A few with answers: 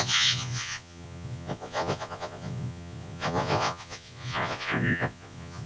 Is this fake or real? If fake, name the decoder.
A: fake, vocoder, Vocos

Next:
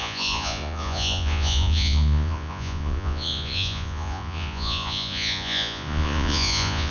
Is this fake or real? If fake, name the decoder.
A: fake, vocoder, Vocos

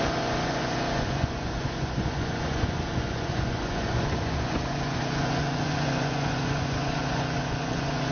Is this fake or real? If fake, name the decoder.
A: fake, vocoder, Vocos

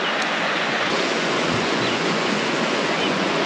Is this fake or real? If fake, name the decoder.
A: fake, vocoder, Vocos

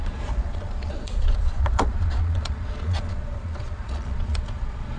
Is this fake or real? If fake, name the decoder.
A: fake, vocoder, Vocos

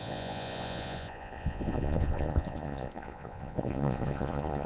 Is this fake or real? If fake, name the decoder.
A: fake, vocoder, Vocos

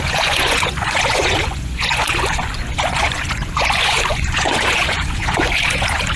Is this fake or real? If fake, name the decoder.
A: fake, vocoder, Vocos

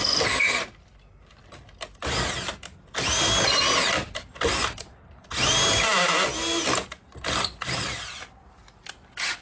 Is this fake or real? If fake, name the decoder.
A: real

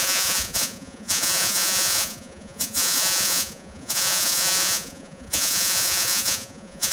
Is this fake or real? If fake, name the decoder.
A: fake, vocoder, Vocos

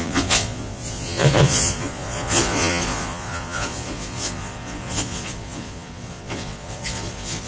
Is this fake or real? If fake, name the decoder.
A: fake, vocoder, Vocos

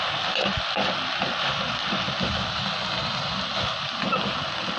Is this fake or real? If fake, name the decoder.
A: real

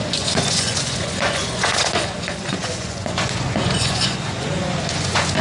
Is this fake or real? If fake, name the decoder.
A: fake, vocoder, Vocos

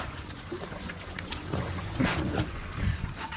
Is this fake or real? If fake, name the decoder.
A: fake, vocoder, Vocos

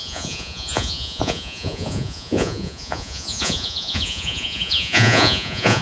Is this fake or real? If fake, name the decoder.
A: fake, vocoder, Vocos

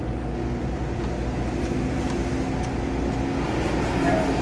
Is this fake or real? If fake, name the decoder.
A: real